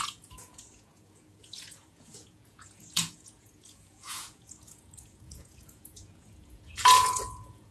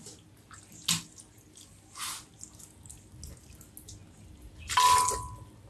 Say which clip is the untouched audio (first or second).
second